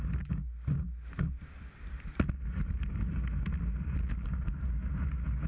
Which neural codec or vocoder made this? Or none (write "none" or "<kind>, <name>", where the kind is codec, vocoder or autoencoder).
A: none